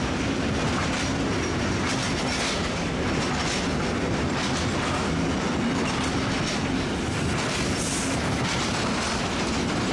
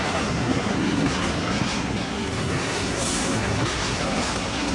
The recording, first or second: first